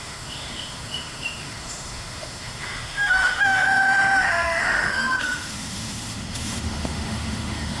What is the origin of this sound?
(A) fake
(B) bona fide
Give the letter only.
A